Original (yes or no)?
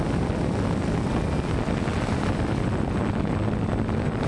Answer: yes